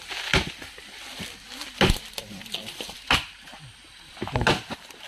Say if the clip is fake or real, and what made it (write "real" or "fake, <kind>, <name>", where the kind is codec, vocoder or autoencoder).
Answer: real